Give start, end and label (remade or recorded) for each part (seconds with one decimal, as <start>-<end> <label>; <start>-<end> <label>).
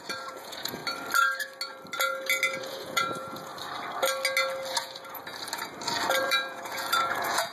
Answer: 0.0-0.8 remade; 0.8-2.6 recorded; 2.6-3.5 remade; 3.5-4.7 recorded; 4.7-5.2 remade; 5.2-6.2 recorded; 6.2-7.5 remade